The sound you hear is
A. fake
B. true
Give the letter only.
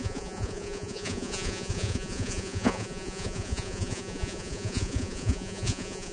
A